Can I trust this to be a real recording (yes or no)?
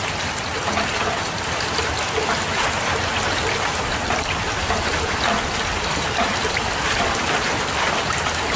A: no